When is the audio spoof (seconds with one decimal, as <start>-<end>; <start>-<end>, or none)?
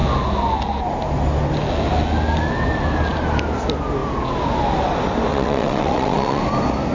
5.3-6.4